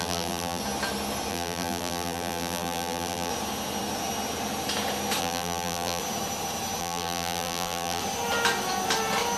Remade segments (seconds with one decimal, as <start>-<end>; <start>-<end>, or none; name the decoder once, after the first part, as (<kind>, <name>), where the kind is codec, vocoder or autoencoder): 0.0-0.6 (vocoder, BigVGAN v2); 1.3-3.3; 5.2-6.0; 6.8-8.0